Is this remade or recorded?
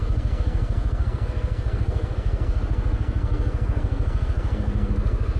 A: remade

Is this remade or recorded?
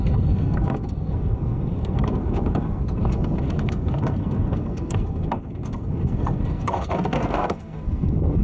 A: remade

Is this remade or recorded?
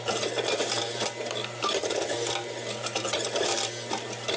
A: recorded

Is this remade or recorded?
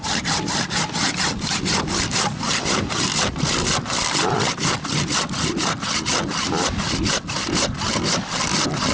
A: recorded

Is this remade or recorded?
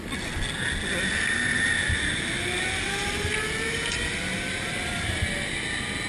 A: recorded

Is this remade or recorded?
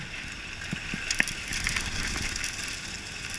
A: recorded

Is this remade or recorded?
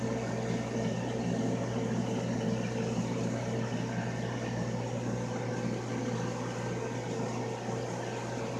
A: recorded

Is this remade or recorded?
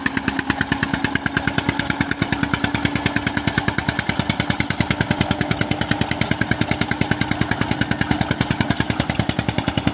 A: recorded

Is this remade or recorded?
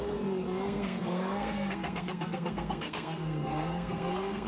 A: remade